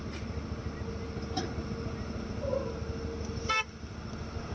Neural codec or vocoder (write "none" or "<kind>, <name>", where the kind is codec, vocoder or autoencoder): none